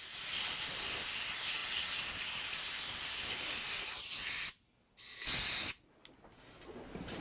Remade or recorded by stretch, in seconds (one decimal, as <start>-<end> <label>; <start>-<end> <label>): 0.0-7.2 recorded